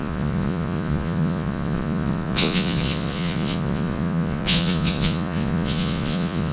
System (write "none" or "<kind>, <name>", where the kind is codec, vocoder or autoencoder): vocoder, Vocos